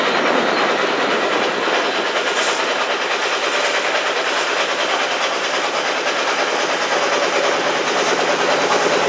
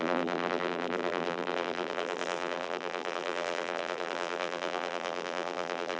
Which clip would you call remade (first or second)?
second